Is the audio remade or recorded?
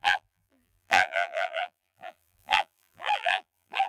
remade